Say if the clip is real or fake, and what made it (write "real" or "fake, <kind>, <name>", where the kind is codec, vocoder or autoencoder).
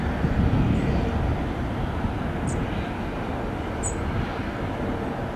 real